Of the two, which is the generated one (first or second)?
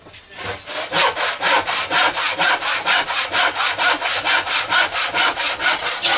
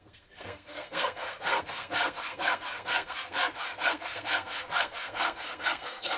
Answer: second